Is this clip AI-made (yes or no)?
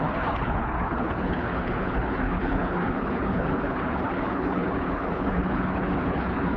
yes